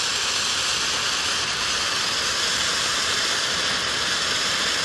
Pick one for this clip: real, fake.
real